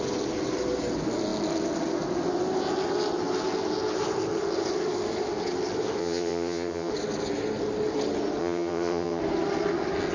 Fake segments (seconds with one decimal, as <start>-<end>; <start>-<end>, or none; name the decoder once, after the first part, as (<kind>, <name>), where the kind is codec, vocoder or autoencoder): 6.0-6.9 (vocoder, HiFi-GAN); 8.4-9.2